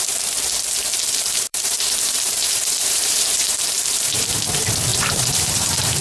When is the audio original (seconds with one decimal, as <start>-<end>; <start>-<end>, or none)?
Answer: 0.0-0.9; 4.4-4.9